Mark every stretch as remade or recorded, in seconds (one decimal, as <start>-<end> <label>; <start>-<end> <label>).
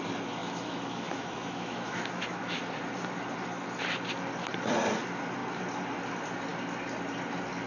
0.0-0.4 recorded; 0.4-2.6 remade; 2.6-7.7 recorded